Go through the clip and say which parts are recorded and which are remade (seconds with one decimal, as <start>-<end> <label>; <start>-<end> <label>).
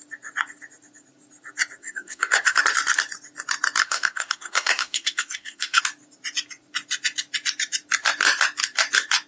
0.0-1.8 recorded; 1.8-2.6 remade; 2.6-3.8 recorded; 3.8-5.8 remade; 5.8-9.3 recorded